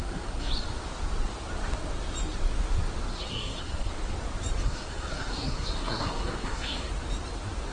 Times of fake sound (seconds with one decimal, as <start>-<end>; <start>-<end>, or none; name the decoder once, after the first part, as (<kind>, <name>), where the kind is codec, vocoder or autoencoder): 0.0-0.5 (codec, SNAC); 3.1-3.9; 4.6-6.9